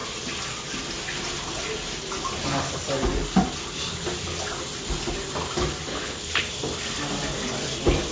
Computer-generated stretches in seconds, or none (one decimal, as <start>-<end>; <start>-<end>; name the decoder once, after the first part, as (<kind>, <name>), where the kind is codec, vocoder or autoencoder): 5.9-6.4 (codec, HILCodec)